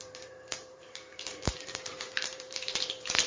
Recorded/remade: remade